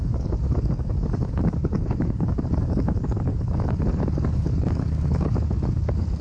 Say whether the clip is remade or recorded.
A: remade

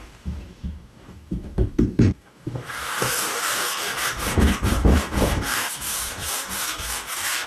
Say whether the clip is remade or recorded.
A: remade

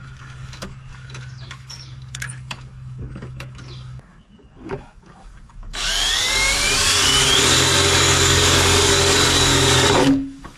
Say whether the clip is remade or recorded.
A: remade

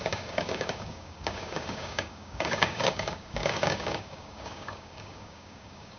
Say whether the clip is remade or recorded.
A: remade